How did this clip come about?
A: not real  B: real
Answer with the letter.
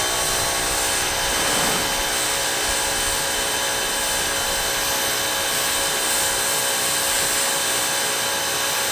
B